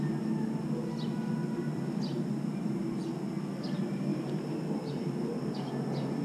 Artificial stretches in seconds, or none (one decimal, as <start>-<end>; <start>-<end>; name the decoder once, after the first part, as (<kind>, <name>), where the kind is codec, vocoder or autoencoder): 1.4-2.0 (vocoder, BigVGAN v2); 4.1-5.1

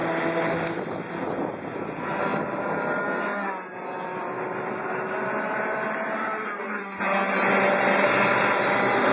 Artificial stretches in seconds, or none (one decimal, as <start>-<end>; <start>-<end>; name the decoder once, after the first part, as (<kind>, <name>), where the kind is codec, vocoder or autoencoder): none

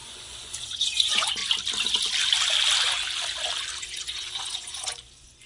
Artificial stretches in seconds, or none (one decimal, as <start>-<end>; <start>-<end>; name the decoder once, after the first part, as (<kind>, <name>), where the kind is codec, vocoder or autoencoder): 0.0-1.4 (vocoder, Vocos); 3.8-5.5

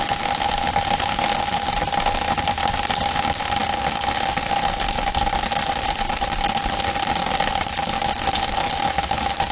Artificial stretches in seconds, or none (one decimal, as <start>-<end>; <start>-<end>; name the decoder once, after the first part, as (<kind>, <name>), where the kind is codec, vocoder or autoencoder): none